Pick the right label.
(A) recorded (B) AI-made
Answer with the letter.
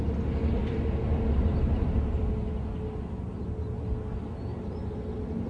A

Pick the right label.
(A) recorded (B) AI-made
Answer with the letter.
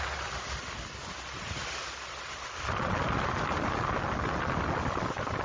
A